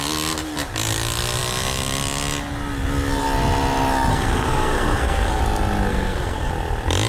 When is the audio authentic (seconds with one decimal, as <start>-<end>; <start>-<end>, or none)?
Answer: 0.0-4.1; 5.4-5.9; 6.5-7.1